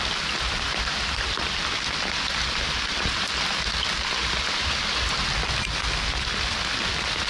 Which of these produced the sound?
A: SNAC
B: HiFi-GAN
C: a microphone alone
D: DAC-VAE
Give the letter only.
C